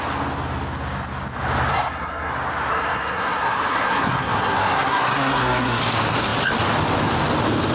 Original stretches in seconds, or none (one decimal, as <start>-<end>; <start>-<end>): 0.0-1.7; 2.3-2.7; 5.8-7.7